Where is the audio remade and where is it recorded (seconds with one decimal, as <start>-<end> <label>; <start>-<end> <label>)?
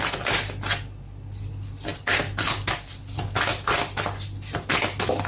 0.0-5.3 recorded